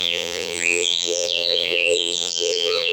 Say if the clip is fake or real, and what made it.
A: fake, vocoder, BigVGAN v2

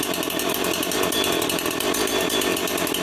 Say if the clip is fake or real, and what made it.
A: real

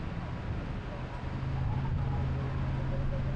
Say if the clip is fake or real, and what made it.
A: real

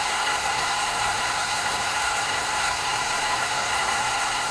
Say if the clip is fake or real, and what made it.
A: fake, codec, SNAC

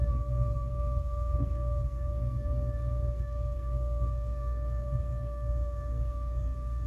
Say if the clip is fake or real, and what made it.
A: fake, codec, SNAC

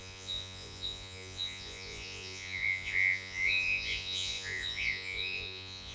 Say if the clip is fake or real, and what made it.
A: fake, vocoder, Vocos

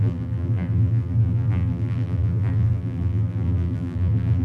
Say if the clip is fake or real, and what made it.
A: fake, vocoder, BigVGAN v2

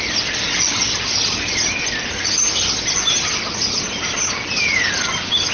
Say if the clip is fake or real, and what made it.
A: real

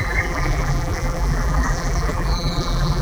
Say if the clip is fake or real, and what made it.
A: fake, vocoder, BigVGAN v2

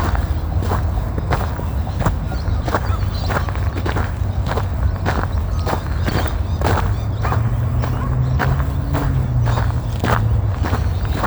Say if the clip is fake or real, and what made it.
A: real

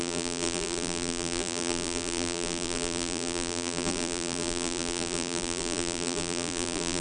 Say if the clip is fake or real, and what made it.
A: fake, vocoder, BigVGAN v2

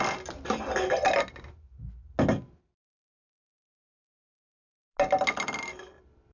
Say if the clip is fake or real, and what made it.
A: real